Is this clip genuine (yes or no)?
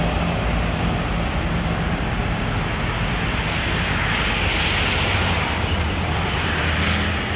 yes